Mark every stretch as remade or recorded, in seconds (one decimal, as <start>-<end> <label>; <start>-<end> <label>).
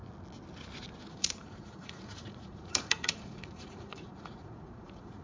0.0-1.1 recorded; 1.1-5.2 remade